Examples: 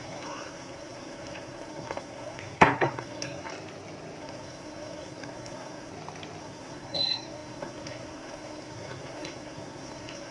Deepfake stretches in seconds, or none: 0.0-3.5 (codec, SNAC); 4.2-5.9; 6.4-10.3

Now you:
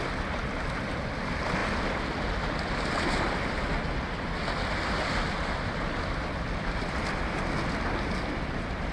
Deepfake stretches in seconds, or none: none